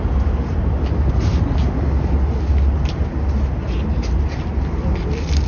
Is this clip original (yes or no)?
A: yes